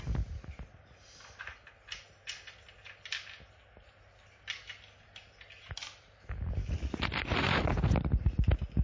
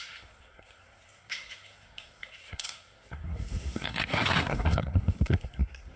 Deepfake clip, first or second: second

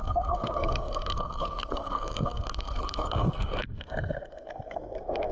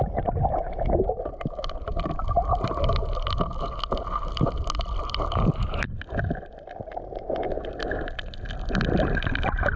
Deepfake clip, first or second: first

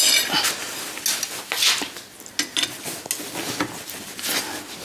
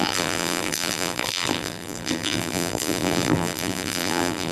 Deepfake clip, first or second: second